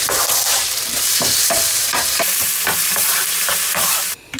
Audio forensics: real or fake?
fake